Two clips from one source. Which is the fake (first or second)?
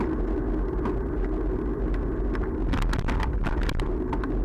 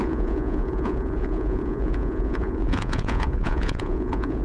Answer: second